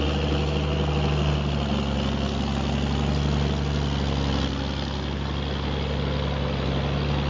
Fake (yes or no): no